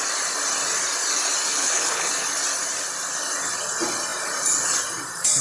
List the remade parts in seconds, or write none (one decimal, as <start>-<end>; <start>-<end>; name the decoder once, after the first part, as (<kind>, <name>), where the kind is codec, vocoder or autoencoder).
1.5-2.1 (codec, HILCodec)